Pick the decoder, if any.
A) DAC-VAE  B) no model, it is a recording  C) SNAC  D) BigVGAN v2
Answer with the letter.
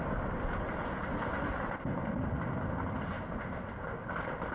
B